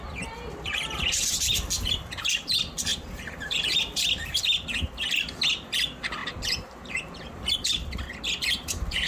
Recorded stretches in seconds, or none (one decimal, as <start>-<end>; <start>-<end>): 0.0-2.9; 3.6-6.2; 7.4-9.1